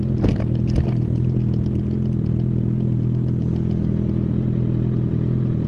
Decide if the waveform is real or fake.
real